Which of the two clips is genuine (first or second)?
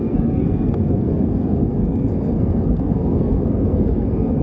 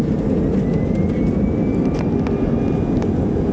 second